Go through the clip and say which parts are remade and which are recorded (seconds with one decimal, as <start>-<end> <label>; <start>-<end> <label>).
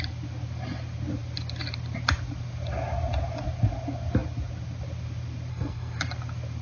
0.0-5.5 recorded; 5.5-6.0 remade; 6.0-6.6 recorded